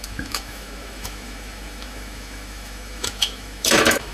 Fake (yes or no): yes